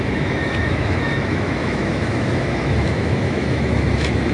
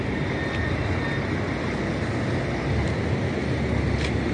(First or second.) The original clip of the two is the second